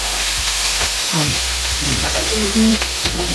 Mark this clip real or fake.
fake